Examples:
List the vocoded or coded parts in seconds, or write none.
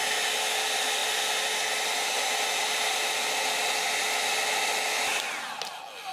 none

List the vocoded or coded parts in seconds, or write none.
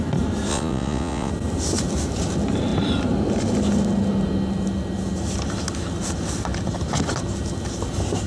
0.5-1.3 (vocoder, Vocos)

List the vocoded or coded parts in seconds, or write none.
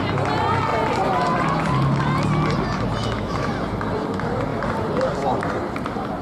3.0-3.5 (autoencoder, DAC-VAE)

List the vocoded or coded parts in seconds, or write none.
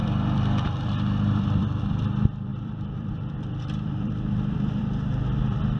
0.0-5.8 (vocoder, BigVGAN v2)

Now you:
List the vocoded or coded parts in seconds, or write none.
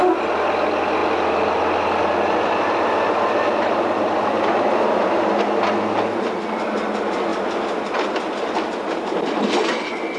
1.0-4.7 (vocoder, BigVGAN v2); 7.3-8.2